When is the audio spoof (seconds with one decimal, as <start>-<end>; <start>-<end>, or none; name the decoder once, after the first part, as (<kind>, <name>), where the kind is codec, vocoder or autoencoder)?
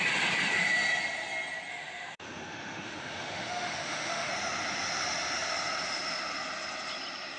1.7-4.3 (autoencoder, DAC-VAE)